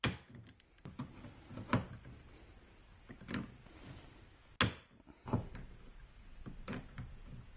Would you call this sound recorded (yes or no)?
yes